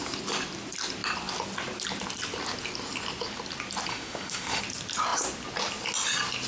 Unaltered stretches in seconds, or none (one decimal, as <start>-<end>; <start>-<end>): 0.0-3.9; 4.6-6.5